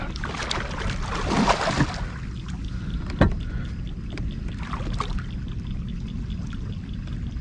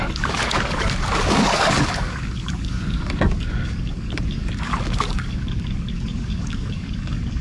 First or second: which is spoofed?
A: second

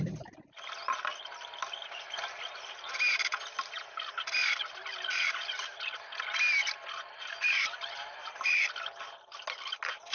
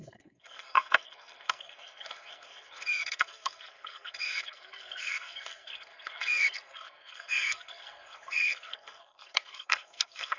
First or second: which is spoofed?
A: second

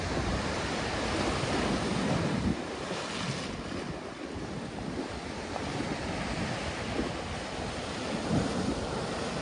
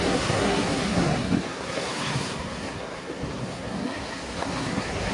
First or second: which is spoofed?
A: second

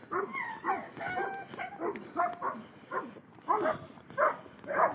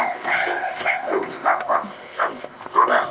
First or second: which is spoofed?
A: second